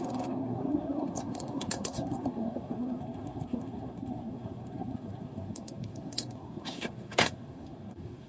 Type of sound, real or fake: fake